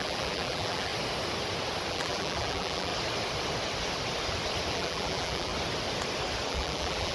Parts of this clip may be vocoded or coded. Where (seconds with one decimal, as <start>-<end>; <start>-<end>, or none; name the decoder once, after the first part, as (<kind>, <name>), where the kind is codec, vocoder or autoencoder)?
0.0-0.9 (vocoder, BigVGAN v2); 1.9-2.9; 4.7-5.5; 6.5-7.1